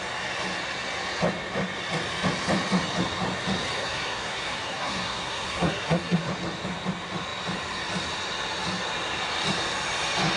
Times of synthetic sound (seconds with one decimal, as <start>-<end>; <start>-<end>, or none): 3.8-6.2